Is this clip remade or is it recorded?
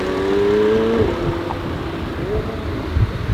recorded